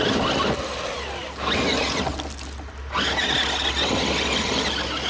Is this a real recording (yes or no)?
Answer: yes